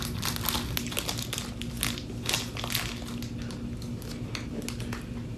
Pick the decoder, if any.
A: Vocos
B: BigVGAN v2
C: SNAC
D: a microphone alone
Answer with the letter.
D